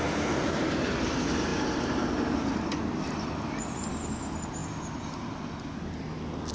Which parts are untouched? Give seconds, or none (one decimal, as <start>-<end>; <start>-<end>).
0.0-6.5